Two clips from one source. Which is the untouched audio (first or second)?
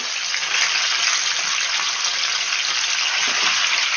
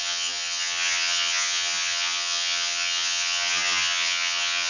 first